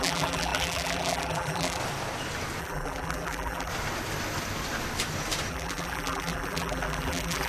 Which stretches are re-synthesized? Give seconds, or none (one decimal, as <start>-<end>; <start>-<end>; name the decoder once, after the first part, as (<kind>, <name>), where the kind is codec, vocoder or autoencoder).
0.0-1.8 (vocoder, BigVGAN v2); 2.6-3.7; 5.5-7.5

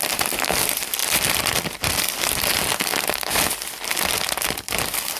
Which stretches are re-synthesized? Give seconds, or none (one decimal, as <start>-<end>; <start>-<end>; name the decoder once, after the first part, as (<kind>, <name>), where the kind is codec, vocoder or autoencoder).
0.0-2.9 (vocoder, BigVGAN v2); 4.5-5.2

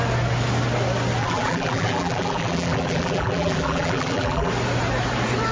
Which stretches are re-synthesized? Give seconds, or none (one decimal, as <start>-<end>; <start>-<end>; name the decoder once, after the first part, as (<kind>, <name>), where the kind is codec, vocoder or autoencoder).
1.2-4.5 (vocoder, BigVGAN v2)